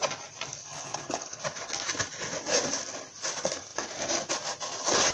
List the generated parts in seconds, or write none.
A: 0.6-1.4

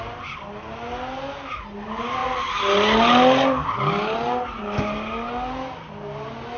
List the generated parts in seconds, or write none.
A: none

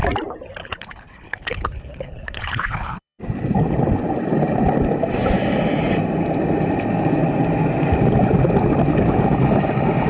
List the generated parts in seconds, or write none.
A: 0.6-3.2

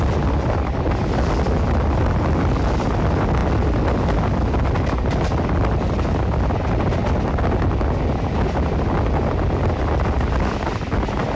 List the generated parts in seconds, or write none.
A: none

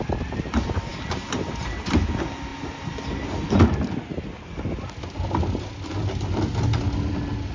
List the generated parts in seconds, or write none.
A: none

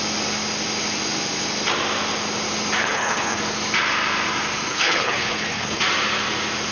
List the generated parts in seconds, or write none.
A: 2.8-3.4; 4.7-5.8

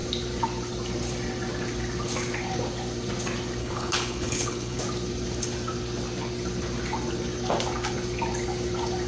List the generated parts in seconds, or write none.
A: 3.6-4.8

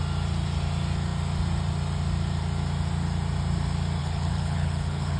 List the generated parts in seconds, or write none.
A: 4.0-5.2